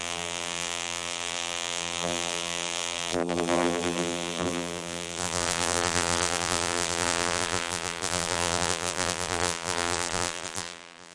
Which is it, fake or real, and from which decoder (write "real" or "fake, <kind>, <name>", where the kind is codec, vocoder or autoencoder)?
fake, vocoder, BigVGAN v2